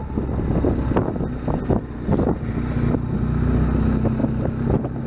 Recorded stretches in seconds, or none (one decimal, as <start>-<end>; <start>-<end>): 0.0-5.1

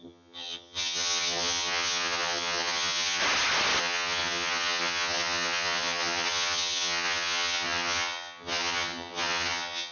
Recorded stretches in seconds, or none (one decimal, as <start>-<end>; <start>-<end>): 3.2-3.8

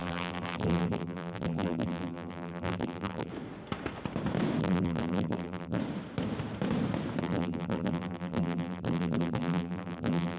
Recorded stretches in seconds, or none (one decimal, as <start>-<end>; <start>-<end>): 3.3-4.6; 5.8-7.2

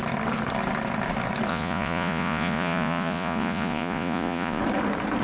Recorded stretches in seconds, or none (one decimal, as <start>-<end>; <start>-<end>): 0.0-1.5; 4.6-5.2

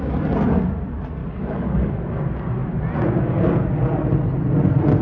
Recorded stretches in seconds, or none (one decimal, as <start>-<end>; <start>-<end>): 0.0-1.2; 1.9-5.0